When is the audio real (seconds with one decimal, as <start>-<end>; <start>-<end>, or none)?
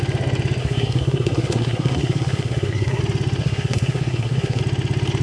0.0-0.6; 3.0-3.4; 4.6-5.2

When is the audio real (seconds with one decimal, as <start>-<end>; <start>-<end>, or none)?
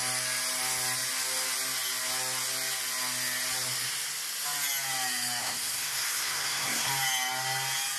0.0-5.4; 6.9-8.0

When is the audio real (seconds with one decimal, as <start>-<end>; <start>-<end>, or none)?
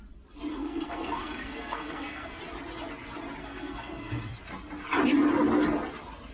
0.0-0.5; 2.4-3.4; 4.3-6.3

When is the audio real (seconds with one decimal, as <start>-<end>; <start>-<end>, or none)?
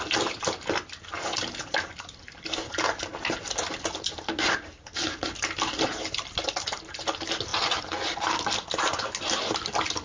0.0-10.0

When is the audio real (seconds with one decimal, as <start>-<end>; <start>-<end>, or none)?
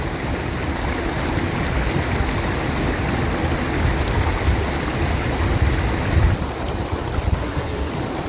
0.0-7.4; 7.9-8.3